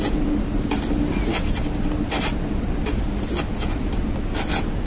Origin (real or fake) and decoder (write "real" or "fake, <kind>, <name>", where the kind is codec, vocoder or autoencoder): real